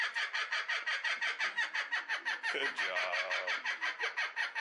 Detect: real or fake real